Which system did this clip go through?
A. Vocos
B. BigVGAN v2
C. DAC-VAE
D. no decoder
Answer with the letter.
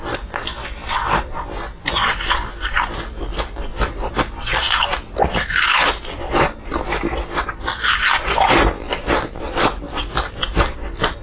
D